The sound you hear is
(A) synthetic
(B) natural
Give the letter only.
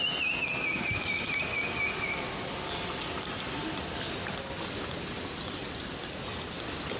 B